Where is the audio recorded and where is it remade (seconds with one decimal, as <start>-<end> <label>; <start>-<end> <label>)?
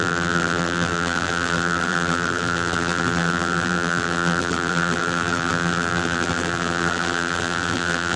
0.0-8.2 remade